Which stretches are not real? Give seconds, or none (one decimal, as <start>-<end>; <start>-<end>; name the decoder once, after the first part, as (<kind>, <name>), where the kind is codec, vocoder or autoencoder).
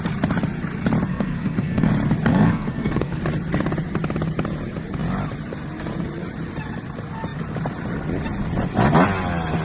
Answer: 1.1-1.9 (codec, SNAC); 2.3-3.2